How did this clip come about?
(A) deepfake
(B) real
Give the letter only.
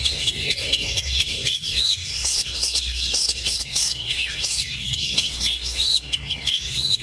A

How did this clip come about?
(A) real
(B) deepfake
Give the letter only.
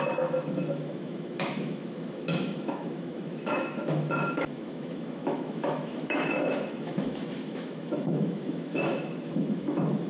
B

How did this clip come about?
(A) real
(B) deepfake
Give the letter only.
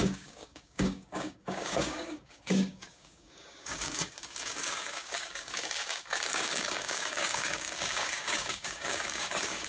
B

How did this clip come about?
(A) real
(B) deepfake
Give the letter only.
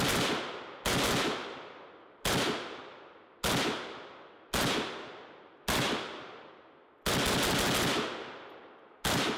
A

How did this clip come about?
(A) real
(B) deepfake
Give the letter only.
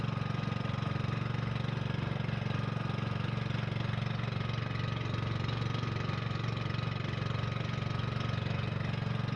A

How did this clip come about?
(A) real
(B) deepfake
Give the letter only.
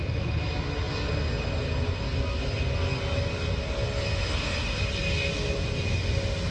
A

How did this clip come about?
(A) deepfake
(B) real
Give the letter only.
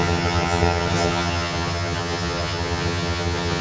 A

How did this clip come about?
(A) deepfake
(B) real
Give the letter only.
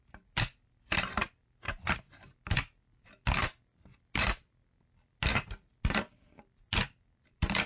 B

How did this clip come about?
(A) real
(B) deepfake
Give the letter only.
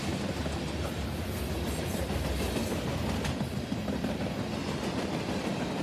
A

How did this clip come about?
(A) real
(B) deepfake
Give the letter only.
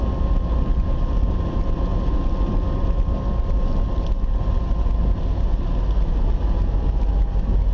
A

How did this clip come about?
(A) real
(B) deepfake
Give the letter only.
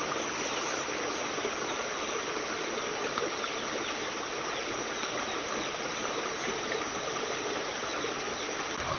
A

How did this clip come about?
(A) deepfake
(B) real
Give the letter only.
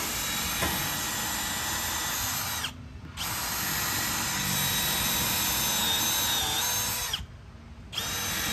B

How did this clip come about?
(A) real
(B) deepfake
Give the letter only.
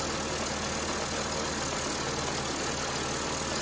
A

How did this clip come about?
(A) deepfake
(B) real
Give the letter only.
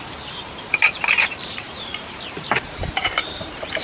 A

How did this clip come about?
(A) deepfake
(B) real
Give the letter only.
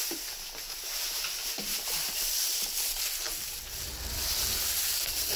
B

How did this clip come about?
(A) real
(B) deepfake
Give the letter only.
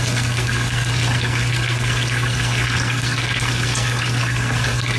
B